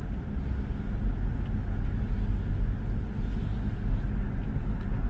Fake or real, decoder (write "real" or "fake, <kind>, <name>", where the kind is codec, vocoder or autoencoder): real